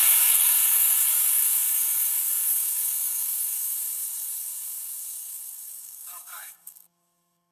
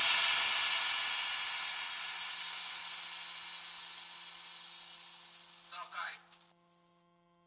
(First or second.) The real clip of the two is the second